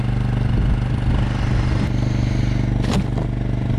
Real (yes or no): yes